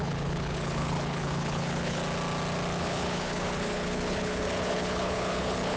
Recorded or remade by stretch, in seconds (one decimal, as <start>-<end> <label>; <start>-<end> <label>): 0.0-2.0 remade; 2.0-2.8 recorded; 2.8-5.8 remade